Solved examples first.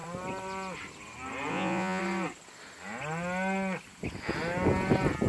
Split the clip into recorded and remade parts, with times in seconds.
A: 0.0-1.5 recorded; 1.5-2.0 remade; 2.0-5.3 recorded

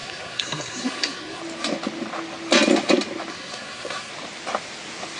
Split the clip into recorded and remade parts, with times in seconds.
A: 0.0-1.4 remade; 1.4-3.3 recorded; 3.3-4.1 remade; 4.1-5.2 recorded

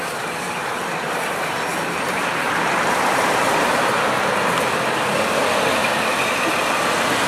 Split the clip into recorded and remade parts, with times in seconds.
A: 0.0-0.6 recorded; 0.6-1.2 remade; 1.2-1.7 recorded; 1.7-3.9 remade; 3.9-7.3 recorded

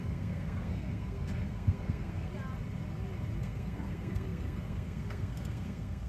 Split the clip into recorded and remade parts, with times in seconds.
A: 0.0-2.3 remade; 2.3-3.4 recorded; 3.4-6.1 remade

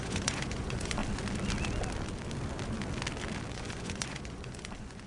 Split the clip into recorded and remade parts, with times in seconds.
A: 0.0-1.0 remade; 1.0-3.5 recorded; 3.5-5.1 remade

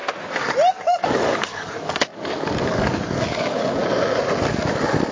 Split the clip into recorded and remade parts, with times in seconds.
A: 0.0-0.7 recorded; 0.7-3.8 remade; 3.8-5.1 recorded

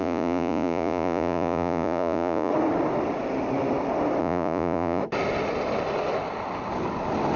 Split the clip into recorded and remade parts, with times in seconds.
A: 0.0-2.5 remade; 2.5-4.2 recorded; 4.2-5.0 remade; 5.0-7.4 recorded